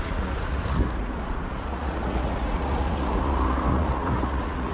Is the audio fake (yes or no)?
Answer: yes